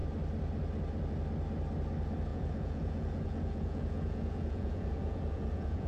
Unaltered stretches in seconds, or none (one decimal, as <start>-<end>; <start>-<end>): 0.0-2.3